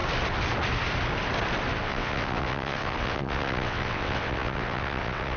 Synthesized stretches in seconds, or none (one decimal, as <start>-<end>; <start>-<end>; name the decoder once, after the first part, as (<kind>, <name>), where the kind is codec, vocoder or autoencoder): 1.8-5.4 (vocoder, WaveNeXt)